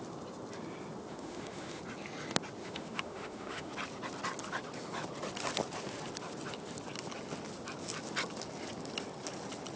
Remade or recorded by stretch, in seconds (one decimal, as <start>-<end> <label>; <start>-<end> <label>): 0.0-1.1 recorded; 1.1-1.8 remade; 1.8-2.6 recorded; 2.6-3.7 remade; 3.7-9.8 recorded